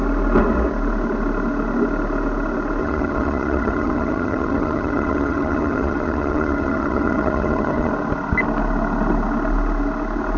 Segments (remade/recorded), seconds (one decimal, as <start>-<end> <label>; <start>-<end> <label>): 0.0-2.8 recorded; 2.8-7.9 remade; 7.9-10.4 recorded